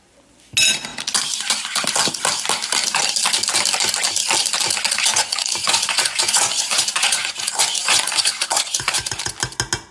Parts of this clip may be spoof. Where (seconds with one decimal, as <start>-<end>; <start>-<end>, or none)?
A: 5.1-9.2